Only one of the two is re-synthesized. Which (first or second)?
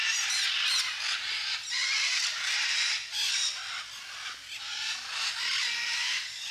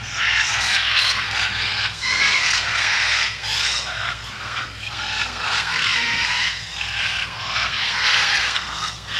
second